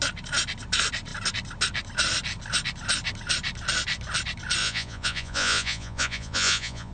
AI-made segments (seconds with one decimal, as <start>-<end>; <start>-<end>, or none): 4.6-6.9